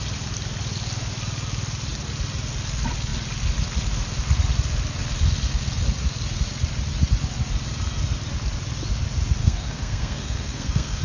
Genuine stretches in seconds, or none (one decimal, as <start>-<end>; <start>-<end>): 0.0-9.4